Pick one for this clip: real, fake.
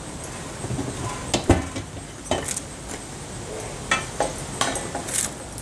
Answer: real